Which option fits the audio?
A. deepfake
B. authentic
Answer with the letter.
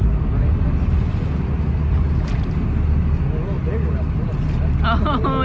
B